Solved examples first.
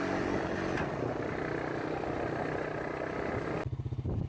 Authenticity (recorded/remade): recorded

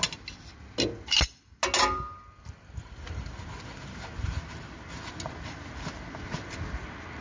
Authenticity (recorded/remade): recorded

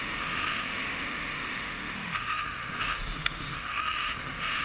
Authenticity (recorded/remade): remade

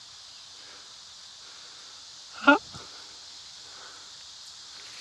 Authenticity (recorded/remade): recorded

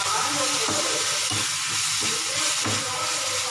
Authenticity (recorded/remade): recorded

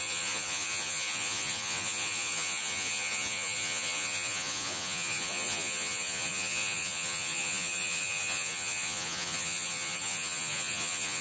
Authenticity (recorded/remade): remade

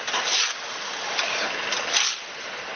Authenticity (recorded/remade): recorded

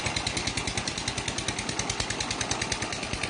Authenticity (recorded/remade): recorded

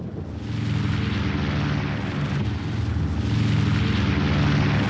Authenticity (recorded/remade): recorded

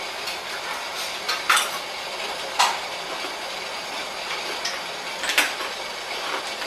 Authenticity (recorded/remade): recorded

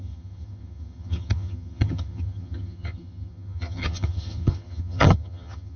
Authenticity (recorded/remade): remade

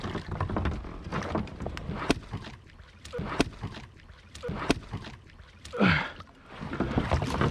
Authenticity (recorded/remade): recorded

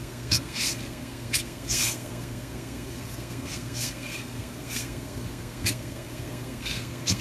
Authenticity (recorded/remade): remade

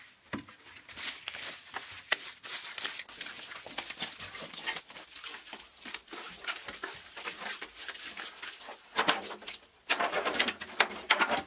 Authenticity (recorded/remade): recorded